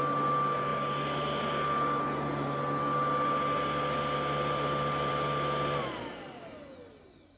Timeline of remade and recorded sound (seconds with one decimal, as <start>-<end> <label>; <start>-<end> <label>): 0.0-7.4 recorded

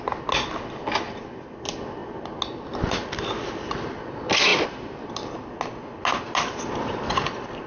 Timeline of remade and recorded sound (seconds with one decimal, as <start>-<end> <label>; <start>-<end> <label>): 0.0-7.7 recorded

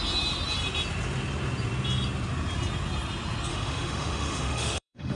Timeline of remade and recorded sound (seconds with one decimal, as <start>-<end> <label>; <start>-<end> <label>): 0.0-3.5 recorded; 3.5-5.2 remade

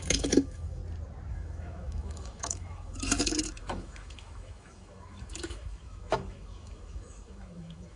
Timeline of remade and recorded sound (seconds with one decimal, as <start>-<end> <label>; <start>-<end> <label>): 0.0-0.8 remade; 0.8-1.3 recorded; 1.3-8.0 remade

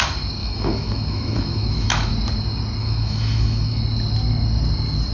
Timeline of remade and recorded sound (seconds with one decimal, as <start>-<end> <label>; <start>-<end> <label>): 0.0-0.4 recorded; 0.4-2.1 remade; 2.1-2.8 recorded; 2.8-3.8 remade; 3.8-5.1 recorded